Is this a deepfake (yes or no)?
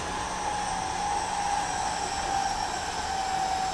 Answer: no